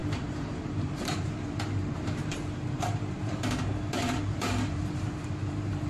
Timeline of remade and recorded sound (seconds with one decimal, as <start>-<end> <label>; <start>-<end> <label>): 0.0-3.5 remade; 3.5-4.0 recorded; 4.0-5.9 remade